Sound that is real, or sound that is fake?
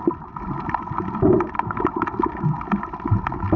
real